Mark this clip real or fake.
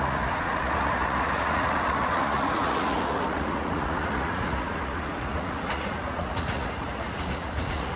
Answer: fake